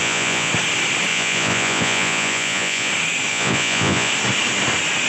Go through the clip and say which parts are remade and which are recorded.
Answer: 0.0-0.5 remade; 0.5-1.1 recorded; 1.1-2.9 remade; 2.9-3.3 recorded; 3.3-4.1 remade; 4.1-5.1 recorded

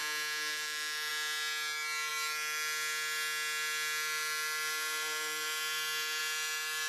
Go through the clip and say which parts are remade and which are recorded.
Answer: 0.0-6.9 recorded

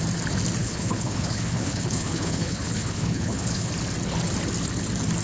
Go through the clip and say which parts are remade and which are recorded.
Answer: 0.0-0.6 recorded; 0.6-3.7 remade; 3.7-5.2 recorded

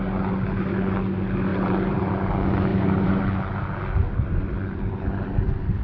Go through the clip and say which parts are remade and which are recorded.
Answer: 0.0-1.5 recorded; 1.5-2.1 remade; 2.1-2.7 recorded; 2.7-3.2 remade; 3.2-5.8 recorded

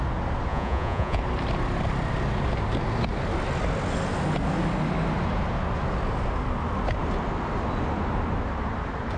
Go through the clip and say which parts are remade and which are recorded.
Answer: 0.0-0.5 recorded; 0.5-1.2 remade; 1.2-9.2 recorded

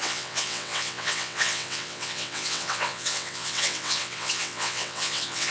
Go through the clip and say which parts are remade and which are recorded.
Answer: 0.0-5.5 remade

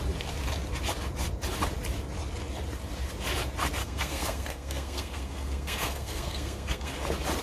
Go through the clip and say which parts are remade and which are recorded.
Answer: 0.0-3.8 recorded; 3.8-6.9 remade; 6.9-7.4 recorded